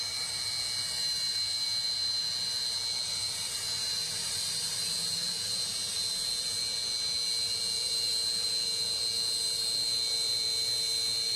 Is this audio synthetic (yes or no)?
no